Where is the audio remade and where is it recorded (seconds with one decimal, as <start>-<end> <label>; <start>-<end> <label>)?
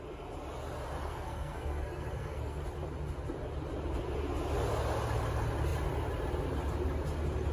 0.0-1.0 recorded; 1.0-2.6 remade; 2.6-7.5 recorded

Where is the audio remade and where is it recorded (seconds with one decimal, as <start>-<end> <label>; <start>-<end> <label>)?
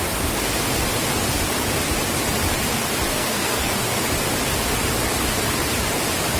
0.0-3.1 recorded; 3.1-3.7 remade; 3.7-6.4 recorded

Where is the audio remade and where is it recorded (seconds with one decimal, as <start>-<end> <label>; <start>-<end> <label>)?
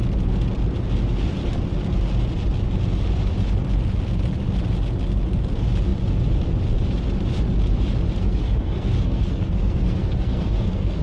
0.0-8.2 recorded; 8.2-11.0 remade